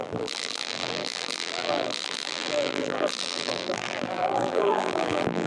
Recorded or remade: remade